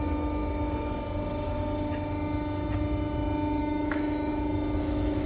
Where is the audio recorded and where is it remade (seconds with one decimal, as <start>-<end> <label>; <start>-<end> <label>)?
0.0-0.4 remade; 0.4-3.6 recorded; 3.6-4.3 remade; 4.3-4.8 recorded; 4.8-5.3 remade

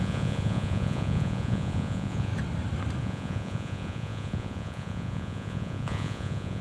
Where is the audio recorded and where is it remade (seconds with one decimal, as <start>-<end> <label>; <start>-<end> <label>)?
0.0-2.3 remade; 2.3-3.0 recorded; 3.0-6.6 remade

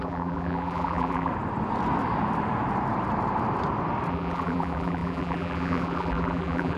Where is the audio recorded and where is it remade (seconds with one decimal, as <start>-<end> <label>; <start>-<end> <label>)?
0.0-1.3 remade; 1.3-4.1 recorded; 4.1-6.8 remade